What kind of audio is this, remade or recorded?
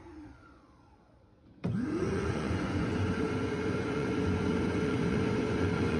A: remade